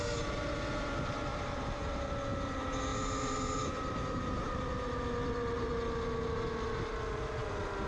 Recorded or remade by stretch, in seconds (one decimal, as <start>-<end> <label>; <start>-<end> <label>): 0.0-1.3 recorded; 1.3-2.1 remade; 2.1-2.9 recorded; 2.9-5.7 remade; 5.7-7.9 recorded